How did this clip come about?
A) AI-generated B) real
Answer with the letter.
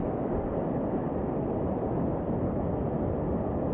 B